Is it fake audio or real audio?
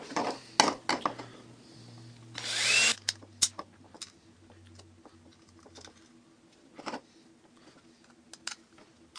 real